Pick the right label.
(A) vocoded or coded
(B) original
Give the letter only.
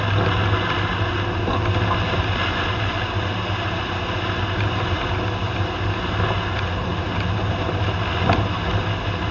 B